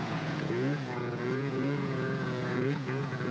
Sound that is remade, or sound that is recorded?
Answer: remade